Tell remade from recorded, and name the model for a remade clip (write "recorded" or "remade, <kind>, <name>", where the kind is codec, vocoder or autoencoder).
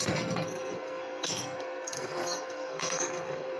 remade, codec, SNAC